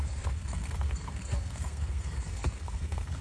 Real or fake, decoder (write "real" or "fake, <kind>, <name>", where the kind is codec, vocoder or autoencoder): fake, codec, SNAC